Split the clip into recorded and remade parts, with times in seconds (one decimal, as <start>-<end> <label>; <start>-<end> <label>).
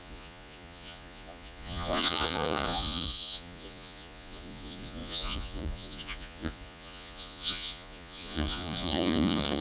0.0-9.6 remade